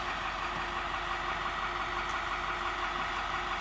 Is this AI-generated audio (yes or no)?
no